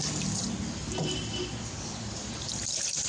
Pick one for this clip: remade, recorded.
recorded